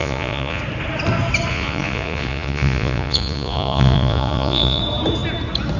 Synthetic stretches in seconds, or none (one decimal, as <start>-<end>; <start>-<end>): 0.0-0.6; 1.5-4.8